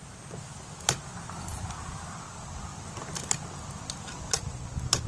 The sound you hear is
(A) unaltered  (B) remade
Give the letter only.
A